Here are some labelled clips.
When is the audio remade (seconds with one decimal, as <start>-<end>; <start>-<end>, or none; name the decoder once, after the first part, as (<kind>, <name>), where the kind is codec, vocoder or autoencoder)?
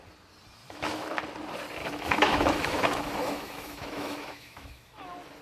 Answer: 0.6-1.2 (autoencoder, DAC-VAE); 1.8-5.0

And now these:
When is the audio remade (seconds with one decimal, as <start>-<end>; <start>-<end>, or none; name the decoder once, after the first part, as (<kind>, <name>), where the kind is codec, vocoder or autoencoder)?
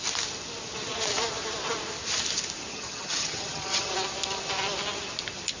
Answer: 2.7-3.9 (vocoder, HiFi-GAN)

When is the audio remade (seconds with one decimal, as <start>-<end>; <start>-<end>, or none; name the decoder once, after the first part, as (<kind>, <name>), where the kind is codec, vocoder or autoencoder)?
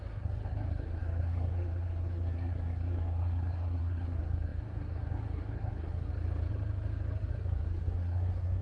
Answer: 0.0-6.1 (codec, SNAC); 7.3-8.6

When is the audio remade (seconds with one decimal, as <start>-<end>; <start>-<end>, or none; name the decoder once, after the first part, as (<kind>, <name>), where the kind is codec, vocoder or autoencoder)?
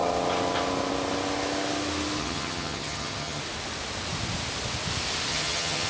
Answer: 2.2-3.4 (vocoder, HiFi-GAN); 5.3-5.9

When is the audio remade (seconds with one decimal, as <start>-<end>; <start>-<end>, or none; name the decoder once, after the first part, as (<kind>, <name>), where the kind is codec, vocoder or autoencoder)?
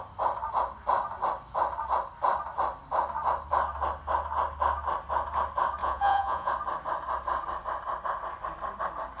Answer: 5.8-6.5 (vocoder, Vocos)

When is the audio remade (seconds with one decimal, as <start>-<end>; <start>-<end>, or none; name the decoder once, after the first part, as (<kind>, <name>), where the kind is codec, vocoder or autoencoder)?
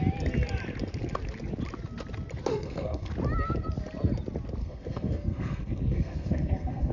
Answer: 2.5-3.1 (codec, SNAC); 4.6-6.9